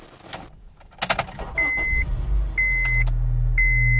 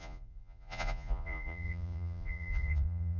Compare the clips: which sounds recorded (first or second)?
first